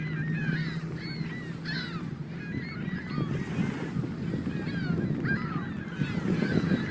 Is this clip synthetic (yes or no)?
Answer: no